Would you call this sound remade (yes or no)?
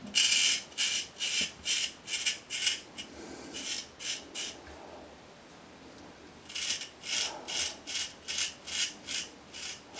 no